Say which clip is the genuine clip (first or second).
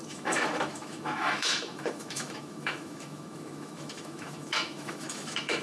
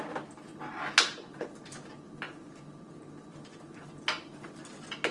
second